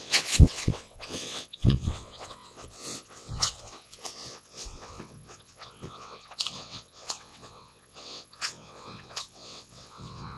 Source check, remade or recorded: remade